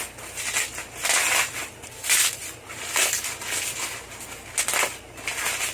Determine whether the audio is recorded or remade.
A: recorded